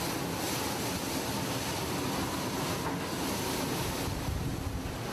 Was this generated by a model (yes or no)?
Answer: no